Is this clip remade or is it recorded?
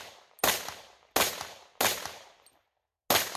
recorded